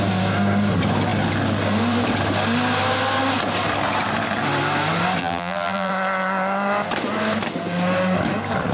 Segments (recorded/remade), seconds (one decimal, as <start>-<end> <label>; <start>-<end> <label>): 0.0-5.2 recorded; 5.2-5.9 remade; 5.9-8.7 recorded